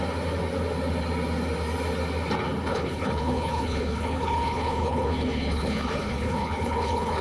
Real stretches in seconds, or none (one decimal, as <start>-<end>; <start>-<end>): 0.0-2.7